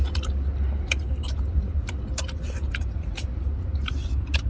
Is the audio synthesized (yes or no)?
no